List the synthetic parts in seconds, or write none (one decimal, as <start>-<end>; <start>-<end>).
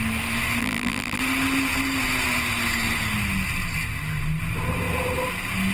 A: 0.6-1.2